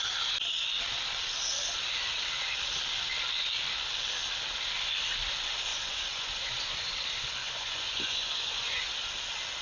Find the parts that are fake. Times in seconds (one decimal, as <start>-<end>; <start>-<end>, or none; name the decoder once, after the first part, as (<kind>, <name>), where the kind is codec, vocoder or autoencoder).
5.7-6.9 (vocoder, Vocos); 7.4-8.9